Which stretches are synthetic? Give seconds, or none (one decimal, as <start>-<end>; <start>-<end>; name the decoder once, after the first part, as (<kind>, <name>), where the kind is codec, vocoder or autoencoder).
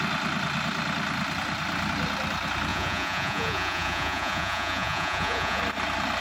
2.7-5.6 (vocoder, Vocos)